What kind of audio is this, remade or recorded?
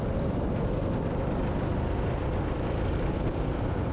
recorded